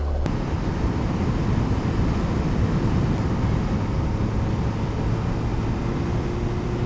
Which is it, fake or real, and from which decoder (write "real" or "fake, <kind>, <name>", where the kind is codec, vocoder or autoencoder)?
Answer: real